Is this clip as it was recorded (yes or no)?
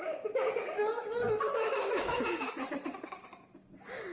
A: no